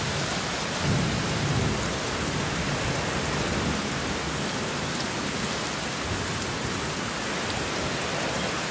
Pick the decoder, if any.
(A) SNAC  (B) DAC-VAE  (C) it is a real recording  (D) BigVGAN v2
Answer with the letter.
C